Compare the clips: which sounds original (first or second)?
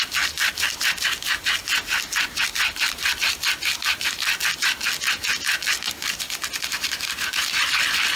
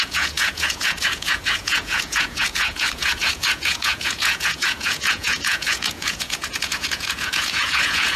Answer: first